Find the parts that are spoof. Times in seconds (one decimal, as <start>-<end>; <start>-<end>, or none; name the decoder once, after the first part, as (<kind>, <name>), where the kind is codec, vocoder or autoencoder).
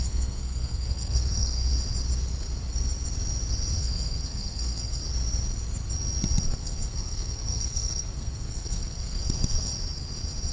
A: 0.0-1.7 (codec, SNAC); 3.8-5.0; 6.6-9.7